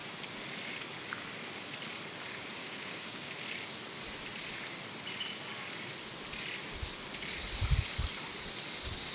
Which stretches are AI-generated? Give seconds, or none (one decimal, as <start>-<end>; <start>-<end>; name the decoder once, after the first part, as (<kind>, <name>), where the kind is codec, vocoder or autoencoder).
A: 2.6-3.3 (codec, DAC)